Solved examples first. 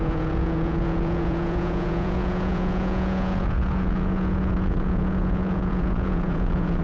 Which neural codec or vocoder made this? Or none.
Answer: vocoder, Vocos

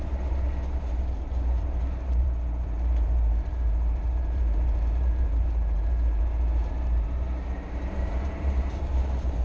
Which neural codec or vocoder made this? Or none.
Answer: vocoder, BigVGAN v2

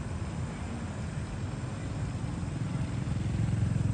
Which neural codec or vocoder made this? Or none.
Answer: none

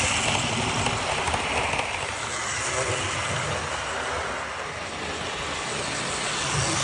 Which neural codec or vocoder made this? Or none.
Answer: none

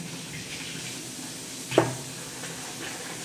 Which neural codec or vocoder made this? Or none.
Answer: none